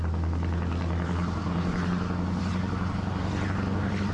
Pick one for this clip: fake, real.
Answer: real